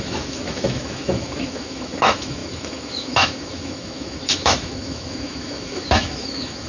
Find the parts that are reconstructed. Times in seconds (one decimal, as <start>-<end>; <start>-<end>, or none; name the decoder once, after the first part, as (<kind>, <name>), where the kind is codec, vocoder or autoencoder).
0.0-6.7 (autoencoder, DAC-VAE)